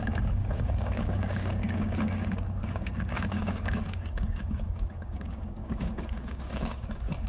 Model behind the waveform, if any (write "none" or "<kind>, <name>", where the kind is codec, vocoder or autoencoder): codec, DAC